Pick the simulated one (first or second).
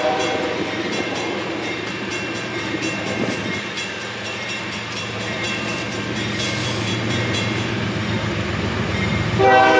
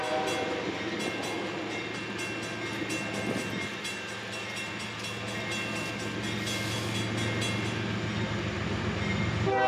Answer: first